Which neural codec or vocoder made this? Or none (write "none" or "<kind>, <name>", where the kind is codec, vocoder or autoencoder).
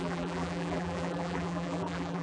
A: vocoder, BigVGAN v2